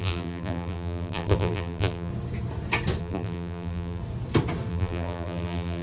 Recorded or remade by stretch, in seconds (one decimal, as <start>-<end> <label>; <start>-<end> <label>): 0.0-2.1 remade; 2.1-3.0 recorded; 3.0-4.0 remade; 4.0-4.7 recorded; 4.7-5.8 remade